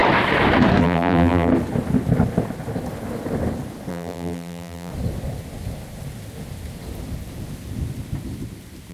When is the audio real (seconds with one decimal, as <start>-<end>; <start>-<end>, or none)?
0.0-0.8; 1.5-3.9; 4.9-8.9